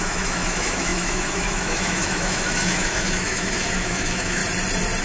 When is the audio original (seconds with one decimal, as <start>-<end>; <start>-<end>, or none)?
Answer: 4.4-5.0